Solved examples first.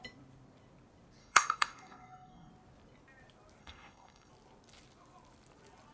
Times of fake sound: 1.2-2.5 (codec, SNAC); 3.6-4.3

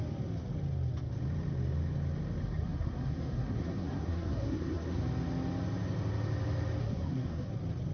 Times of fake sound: 2.4-5.0 (codec, SNAC); 6.8-7.5

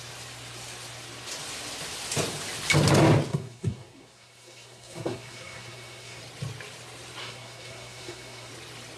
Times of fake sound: 3.3-6.2 (codec, SNAC); 7.2-8.5

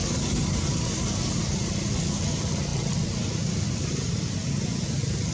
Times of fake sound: none

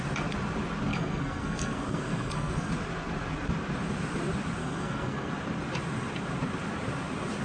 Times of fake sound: 0.9-2.7 (codec, SNAC); 4.6-5.3